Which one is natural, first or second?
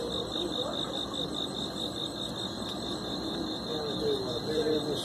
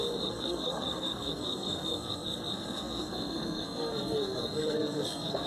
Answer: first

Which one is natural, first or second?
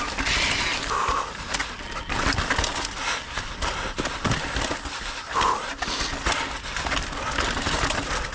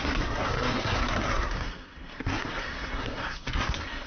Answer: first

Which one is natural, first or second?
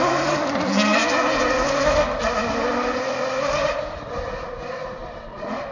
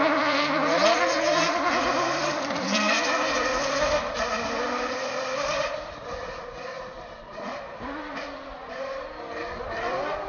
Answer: first